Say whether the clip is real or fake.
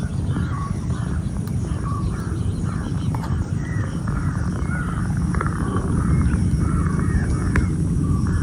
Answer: fake